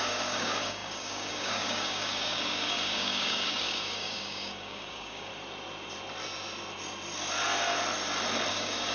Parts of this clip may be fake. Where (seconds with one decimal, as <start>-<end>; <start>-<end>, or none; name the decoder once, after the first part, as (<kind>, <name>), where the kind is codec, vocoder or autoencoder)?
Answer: 0.0-5.3 (codec, DAC); 8.5-8.9